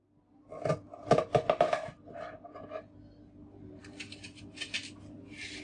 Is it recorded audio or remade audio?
recorded